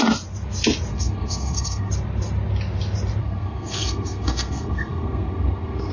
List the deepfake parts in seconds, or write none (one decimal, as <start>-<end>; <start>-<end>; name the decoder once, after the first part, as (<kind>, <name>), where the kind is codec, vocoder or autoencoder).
0.9-1.9 (codec, SNAC); 3.2-5.9